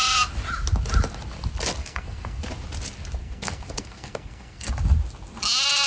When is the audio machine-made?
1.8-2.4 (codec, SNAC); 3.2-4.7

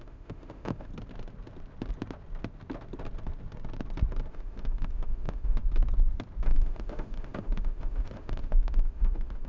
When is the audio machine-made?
0.0-0.9 (autoencoder, DAC-VAE); 4.3-5.6; 6.4-9.5

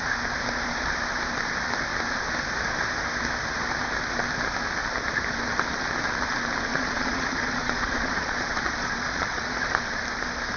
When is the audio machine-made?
6.7-9.8 (vocoder, Vocos)

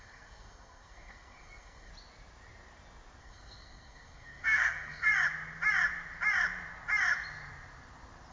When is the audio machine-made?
0.0-1.9 (codec, SNAC); 3.2-5.1

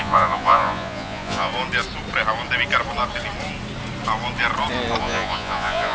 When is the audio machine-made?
0.0-1.5 (vocoder, Vocos); 5.0-5.9

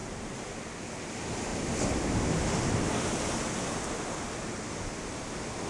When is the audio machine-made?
0.0-0.6 (vocoder, BigVGAN v2); 1.5-4.9

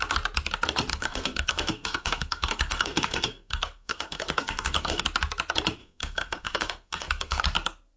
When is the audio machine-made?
0.9-5.0 (codec, SNAC); 5.8-7.4

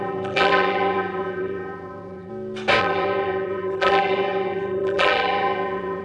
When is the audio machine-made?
0.0-2.3 (vocoder, BigVGAN v2); 2.8-6.0